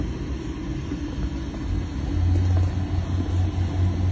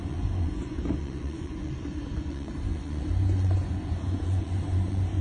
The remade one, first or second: second